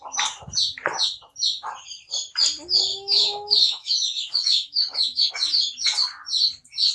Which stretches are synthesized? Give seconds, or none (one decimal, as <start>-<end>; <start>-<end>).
2.9-5.3